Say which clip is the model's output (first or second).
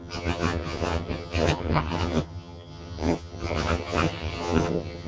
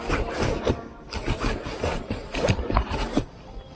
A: first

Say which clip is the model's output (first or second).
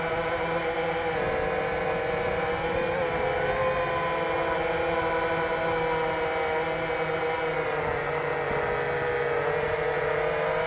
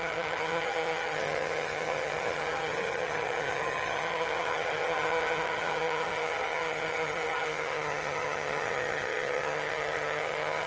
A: second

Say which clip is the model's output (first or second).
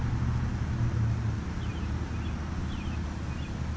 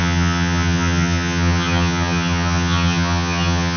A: second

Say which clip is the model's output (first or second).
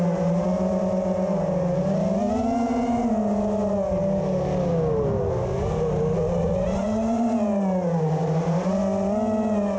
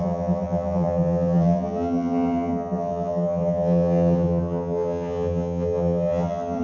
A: second